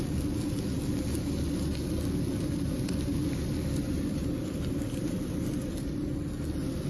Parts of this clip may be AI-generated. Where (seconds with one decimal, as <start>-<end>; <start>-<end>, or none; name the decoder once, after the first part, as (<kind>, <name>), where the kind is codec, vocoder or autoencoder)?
3.2-5.7 (vocoder, BigVGAN v2)